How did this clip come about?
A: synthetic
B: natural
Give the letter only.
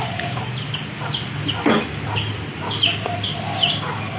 A